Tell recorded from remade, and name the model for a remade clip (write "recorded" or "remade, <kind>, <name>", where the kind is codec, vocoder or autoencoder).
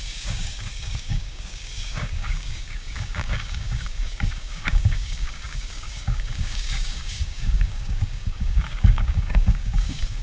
remade, codec, DAC